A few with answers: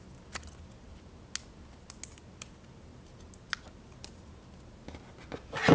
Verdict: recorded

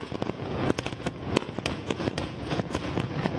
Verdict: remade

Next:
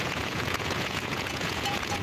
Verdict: remade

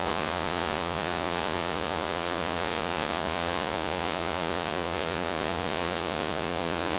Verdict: remade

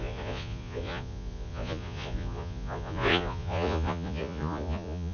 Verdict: remade